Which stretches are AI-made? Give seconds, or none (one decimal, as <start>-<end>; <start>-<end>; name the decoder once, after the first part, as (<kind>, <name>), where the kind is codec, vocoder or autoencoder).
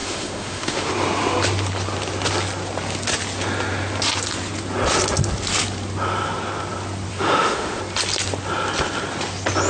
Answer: 0.0-0.9 (autoencoder, DAC-VAE); 7.1-7.8